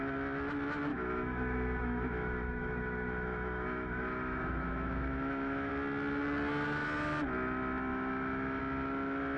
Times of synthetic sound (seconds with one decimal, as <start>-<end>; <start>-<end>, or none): 0.9-5.7; 7.9-8.6